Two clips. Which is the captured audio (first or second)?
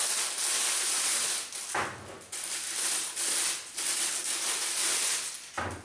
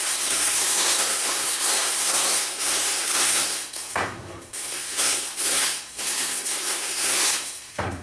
first